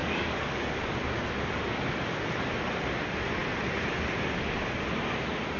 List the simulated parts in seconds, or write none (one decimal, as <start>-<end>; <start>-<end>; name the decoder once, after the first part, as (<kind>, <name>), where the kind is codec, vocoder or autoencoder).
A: 0.0-0.6 (codec, DAC)